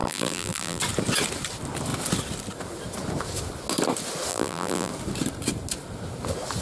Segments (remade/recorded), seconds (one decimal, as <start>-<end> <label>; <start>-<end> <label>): 0.0-0.8 remade; 0.8-4.3 recorded; 4.3-4.9 remade; 4.9-6.6 recorded